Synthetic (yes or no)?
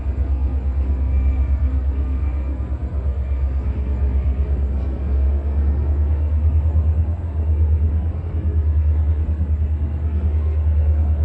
yes